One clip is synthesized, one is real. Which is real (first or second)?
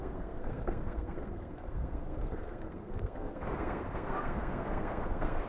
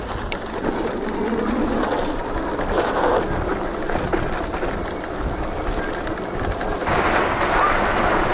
second